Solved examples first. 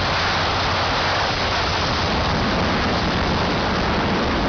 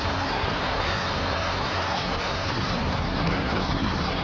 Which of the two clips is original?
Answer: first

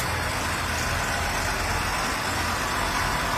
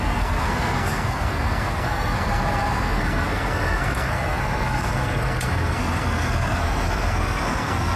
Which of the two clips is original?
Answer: first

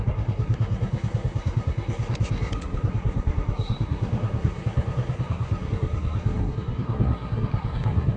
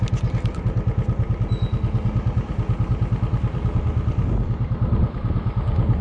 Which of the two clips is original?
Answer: second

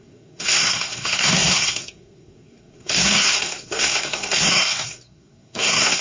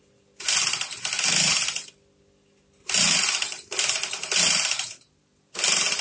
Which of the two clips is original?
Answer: second